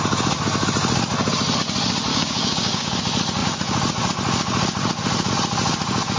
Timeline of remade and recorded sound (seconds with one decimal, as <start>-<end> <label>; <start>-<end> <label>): 0.0-2.1 recorded; 2.1-2.9 remade; 2.9-6.2 recorded